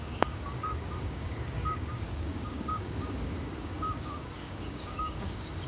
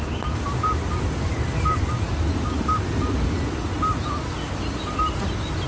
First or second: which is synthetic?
first